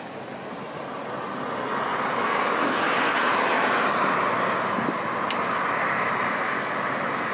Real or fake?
real